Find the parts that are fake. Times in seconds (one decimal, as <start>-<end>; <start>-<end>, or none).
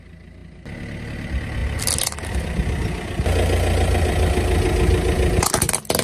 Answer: none